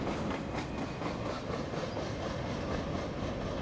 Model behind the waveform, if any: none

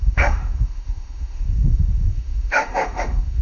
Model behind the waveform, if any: autoencoder, DAC-VAE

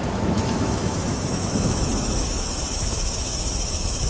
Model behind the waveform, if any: autoencoder, DAC-VAE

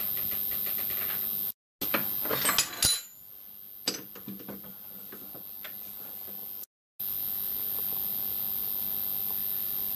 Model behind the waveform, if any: none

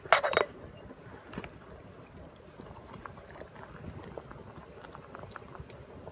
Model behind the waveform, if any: none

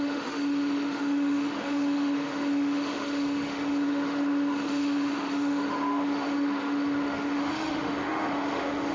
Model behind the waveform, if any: autoencoder, DAC-VAE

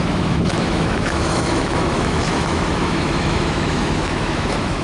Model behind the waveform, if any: autoencoder, DAC-VAE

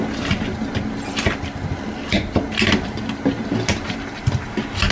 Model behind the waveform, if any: none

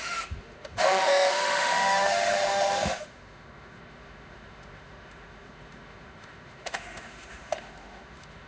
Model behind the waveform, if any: autoencoder, DAC-VAE